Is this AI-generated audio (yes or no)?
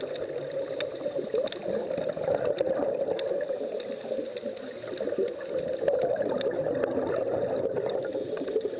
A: no